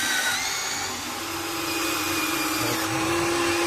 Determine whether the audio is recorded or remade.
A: recorded